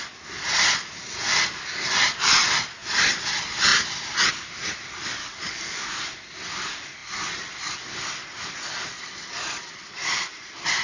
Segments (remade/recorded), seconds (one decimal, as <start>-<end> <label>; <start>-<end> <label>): 0.0-5.1 recorded; 5.1-5.9 remade; 5.9-10.8 recorded